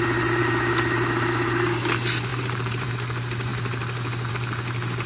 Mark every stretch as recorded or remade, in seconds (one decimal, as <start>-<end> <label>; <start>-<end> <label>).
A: 0.0-2.3 recorded; 2.3-2.9 remade; 2.9-5.1 recorded